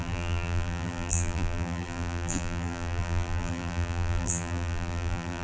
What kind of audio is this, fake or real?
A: fake